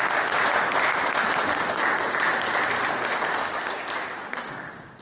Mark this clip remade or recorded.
recorded